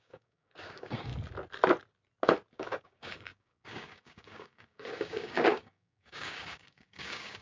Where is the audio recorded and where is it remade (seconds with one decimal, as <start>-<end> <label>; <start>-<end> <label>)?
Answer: 0.0-1.1 remade; 1.1-2.5 recorded; 2.5-7.4 remade